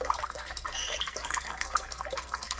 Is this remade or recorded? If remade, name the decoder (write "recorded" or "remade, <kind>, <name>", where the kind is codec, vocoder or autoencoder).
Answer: remade, codec, SNAC